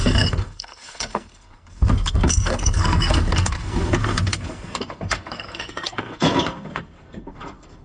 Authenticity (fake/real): fake